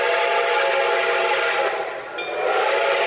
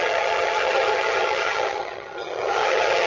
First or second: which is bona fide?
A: first